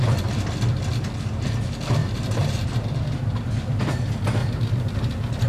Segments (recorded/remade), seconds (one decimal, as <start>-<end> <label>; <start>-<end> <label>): 0.0-2.0 recorded; 2.0-3.2 remade; 3.2-4.4 recorded; 4.4-5.0 remade; 5.0-5.5 recorded